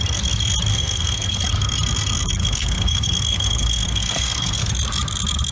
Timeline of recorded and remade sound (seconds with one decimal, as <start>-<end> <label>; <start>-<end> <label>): 0.0-0.7 recorded; 0.7-1.4 remade; 1.4-2.4 recorded; 2.4-4.7 remade; 4.7-5.5 recorded